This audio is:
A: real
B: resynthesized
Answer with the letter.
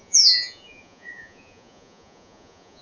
B